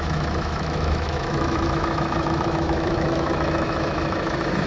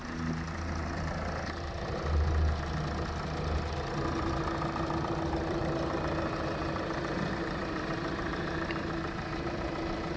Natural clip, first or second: second